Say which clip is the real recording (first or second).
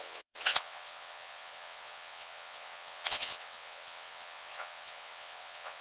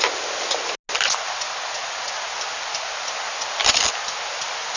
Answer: second